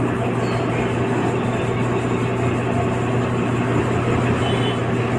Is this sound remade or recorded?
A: recorded